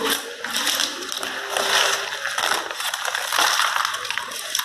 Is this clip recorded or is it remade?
recorded